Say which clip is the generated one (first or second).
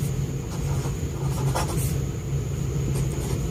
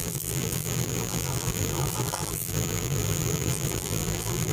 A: second